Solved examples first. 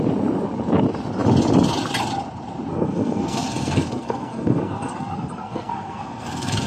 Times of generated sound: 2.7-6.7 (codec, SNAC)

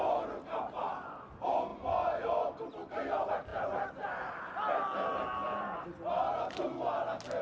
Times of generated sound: none

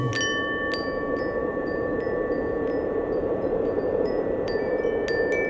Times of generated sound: 1.4-4.7 (vocoder, BigVGAN v2)

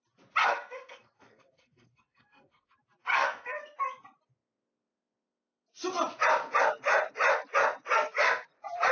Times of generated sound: 0.4-2.7 (codec, SNAC); 3.1-3.6